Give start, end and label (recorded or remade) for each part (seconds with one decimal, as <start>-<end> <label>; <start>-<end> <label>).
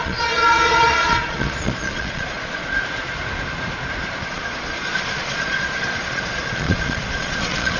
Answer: 0.0-2.6 remade; 2.6-4.2 recorded; 4.2-7.8 remade